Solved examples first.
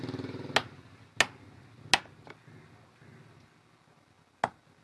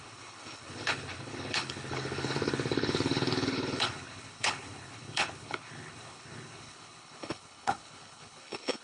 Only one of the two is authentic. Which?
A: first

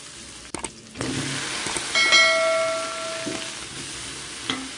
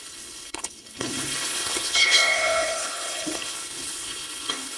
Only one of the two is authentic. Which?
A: first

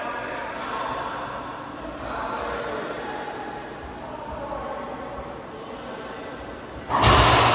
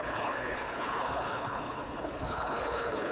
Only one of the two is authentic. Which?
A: first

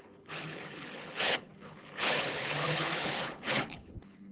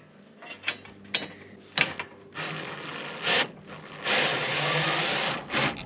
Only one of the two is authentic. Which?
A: second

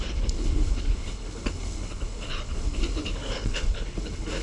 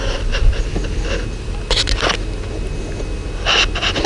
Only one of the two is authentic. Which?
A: second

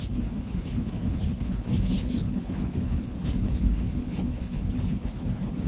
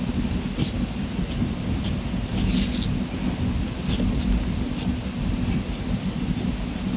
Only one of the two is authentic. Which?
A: second